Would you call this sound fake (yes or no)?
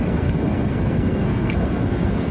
yes